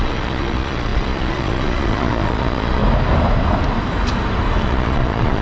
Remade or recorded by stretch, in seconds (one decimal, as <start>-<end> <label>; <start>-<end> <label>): 0.0-2.8 remade; 2.8-4.6 recorded; 4.6-5.4 remade